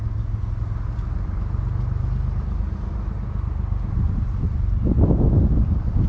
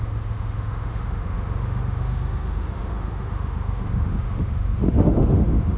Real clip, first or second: first